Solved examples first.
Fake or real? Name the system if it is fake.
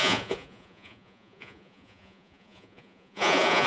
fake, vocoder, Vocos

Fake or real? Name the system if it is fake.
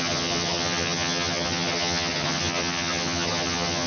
fake, vocoder, HiFi-GAN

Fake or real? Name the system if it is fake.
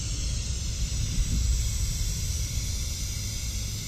real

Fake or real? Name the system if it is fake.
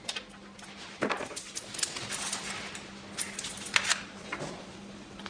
real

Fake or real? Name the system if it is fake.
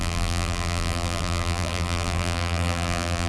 fake, vocoder, BigVGAN v2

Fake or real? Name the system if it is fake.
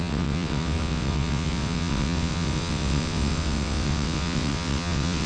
fake, vocoder, WaveNeXt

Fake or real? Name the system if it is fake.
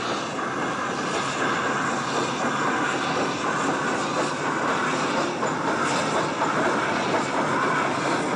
real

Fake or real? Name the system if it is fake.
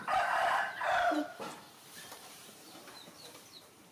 fake, vocoder, BigVGAN v2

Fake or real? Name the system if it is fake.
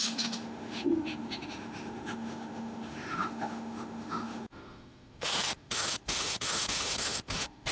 fake, autoencoder, DAC-VAE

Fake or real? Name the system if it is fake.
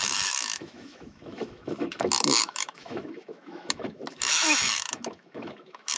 fake, autoencoder, DAC-VAE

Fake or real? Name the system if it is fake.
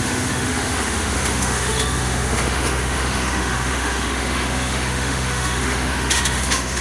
fake, autoencoder, DAC-VAE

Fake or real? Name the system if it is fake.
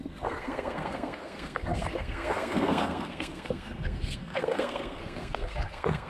fake, codec, SNAC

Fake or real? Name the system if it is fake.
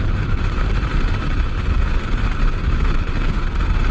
fake, vocoder, BigVGAN v2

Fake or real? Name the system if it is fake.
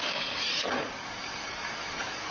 fake, codec, DAC